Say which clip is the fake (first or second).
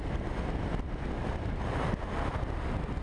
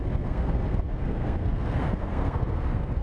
second